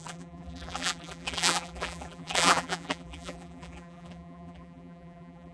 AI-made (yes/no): yes